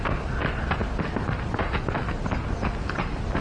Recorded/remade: recorded